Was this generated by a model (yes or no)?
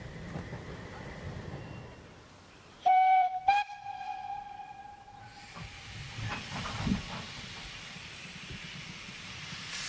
yes